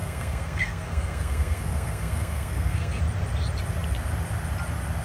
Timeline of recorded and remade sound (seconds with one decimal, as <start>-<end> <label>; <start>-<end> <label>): 0.0-3.0 remade; 3.0-5.0 recorded